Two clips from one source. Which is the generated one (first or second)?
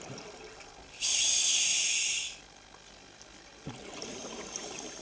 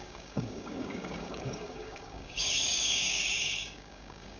second